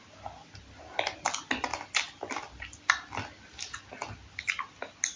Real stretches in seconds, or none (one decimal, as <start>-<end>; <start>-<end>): 0.0-5.2